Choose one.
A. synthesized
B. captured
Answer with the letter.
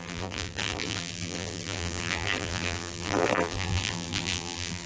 A